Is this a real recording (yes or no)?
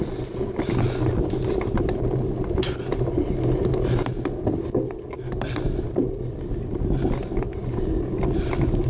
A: yes